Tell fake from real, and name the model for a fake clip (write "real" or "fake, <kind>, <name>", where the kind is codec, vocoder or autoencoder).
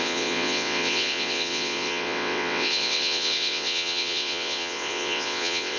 fake, vocoder, WaveNeXt